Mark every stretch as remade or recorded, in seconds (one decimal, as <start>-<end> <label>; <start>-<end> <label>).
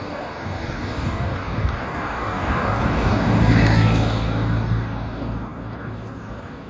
0.0-6.7 remade